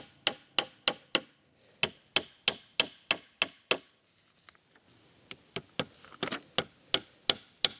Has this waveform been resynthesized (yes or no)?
no